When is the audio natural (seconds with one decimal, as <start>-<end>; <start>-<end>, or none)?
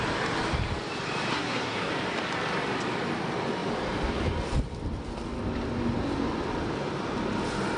0.0-1.3; 1.9-7.8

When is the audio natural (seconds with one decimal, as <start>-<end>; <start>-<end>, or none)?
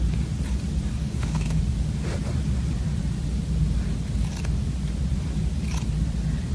0.0-1.0; 1.6-6.5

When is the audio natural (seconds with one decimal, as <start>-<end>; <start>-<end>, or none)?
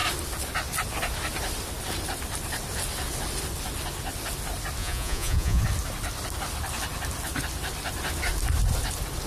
0.0-4.8; 5.6-9.3